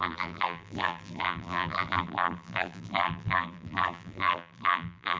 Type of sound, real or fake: fake